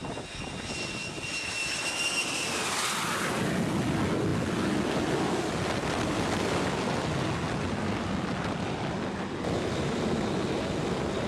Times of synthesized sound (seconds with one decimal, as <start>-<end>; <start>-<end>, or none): none